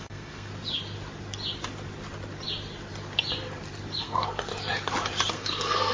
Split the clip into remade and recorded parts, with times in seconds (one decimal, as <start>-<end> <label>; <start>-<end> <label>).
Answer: 0.0-0.5 remade; 0.5-4.0 recorded; 4.0-4.5 remade; 4.5-5.3 recorded; 5.3-5.9 remade